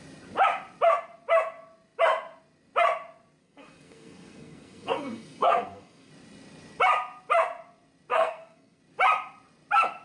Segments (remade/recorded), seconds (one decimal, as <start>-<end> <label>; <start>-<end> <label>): 0.0-3.4 recorded; 3.4-6.1 remade; 6.1-8.1 recorded; 8.1-8.8 remade; 8.8-10.0 recorded